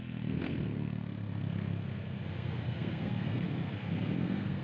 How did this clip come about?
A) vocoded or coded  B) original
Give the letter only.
A